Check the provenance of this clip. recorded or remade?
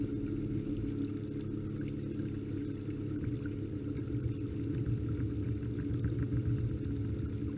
recorded